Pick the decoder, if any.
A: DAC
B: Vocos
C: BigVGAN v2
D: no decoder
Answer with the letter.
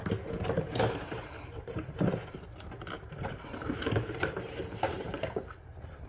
C